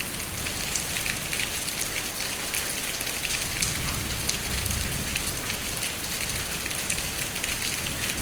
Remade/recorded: recorded